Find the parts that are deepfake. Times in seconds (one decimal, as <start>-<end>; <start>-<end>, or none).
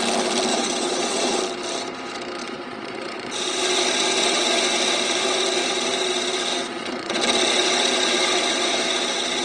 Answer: 0.5-1.4; 2.4-3.3; 6.5-7.2